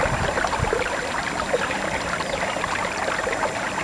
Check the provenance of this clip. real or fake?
real